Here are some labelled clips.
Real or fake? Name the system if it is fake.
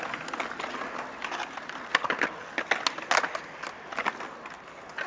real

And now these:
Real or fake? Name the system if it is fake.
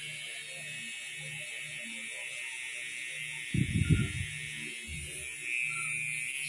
real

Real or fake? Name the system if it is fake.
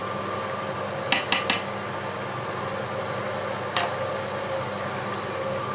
real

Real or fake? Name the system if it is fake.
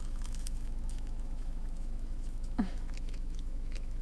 fake, autoencoder, DAC-VAE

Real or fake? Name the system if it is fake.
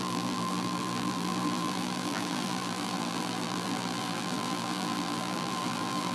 fake, vocoder, BigVGAN v2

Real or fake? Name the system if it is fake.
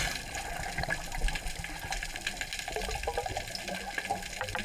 real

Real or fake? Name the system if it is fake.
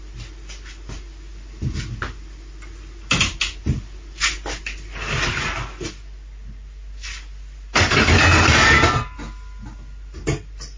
real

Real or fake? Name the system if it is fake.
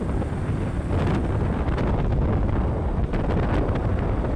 real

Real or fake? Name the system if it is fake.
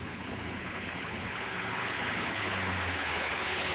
fake, codec, HILCodec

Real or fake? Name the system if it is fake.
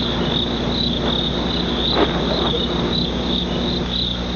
real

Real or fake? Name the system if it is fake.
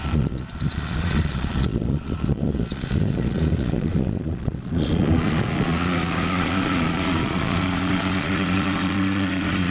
fake, vocoder, Vocos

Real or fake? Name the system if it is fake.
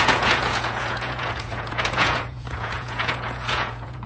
fake, vocoder, Vocos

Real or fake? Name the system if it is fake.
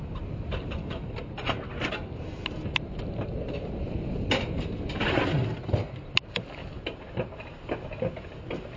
real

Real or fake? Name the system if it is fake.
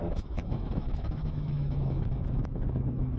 fake, autoencoder, DAC-VAE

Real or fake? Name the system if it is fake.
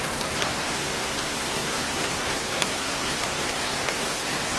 fake, codec, SNAC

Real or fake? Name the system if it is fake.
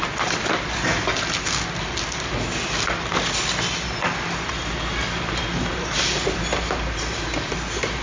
real